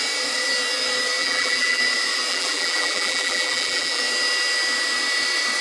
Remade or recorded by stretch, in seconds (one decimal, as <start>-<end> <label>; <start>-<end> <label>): 0.0-1.2 recorded; 1.2-1.8 remade; 1.8-2.3 recorded; 2.3-4.0 remade; 4.0-5.6 recorded